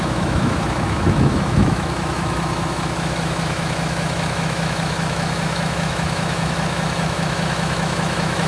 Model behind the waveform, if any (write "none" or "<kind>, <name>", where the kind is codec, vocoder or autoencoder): autoencoder, DAC-VAE